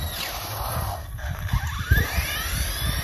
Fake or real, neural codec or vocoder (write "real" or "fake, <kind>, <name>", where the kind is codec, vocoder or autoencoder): real